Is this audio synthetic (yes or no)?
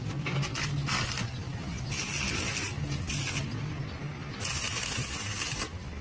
no